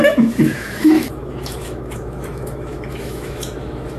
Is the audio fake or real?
fake